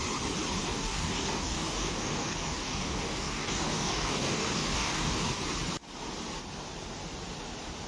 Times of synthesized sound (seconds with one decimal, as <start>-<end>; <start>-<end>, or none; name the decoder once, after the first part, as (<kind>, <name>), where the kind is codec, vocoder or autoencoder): 0.7-5.4 (codec, DAC)